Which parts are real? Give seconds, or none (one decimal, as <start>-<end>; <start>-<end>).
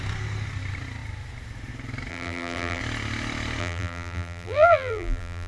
0.0-2.1; 2.8-3.6